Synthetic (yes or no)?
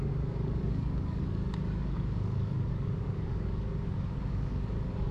yes